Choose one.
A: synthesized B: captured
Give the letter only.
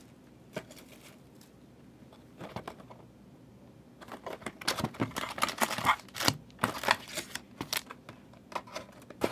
B